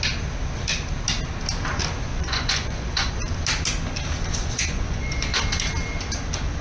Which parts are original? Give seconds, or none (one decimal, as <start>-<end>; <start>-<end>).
0.0-2.1; 3.1-4.4; 5.4-6.6